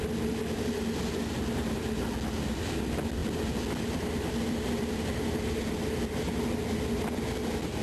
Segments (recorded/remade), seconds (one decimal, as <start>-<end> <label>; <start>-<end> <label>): 0.0-7.8 recorded